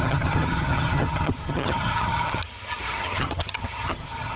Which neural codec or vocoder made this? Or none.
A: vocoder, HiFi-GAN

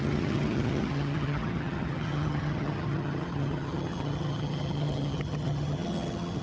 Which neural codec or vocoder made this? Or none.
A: vocoder, HiFi-GAN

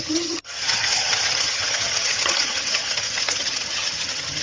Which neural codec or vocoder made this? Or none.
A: vocoder, HiFi-GAN